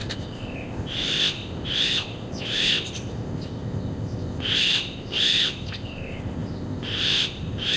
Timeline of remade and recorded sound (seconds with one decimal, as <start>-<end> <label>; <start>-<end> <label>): 0.0-7.8 remade